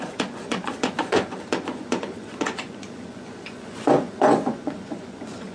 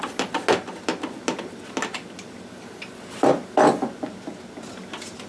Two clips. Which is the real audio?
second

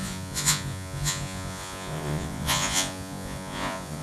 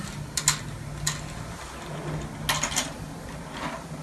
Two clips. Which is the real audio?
second